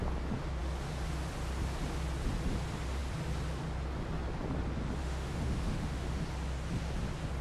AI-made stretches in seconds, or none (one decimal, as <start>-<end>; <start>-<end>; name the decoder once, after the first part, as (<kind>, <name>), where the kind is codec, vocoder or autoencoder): 5.0-6.2 (autoencoder, DAC-VAE)